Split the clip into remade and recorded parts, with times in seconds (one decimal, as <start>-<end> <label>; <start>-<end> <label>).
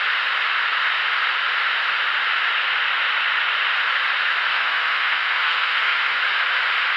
0.0-4.5 recorded; 4.5-6.2 remade; 6.2-7.0 recorded